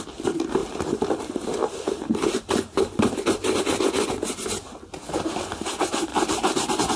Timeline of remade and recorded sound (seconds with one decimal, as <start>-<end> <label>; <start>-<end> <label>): 0.0-0.6 recorded; 0.6-3.6 remade; 3.6-6.1 recorded; 6.1-7.0 remade